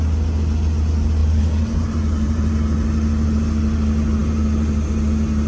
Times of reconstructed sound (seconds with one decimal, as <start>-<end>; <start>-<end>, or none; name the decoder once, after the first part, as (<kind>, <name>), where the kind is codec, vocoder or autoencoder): 1.2-2.5 (vocoder, BigVGAN v2)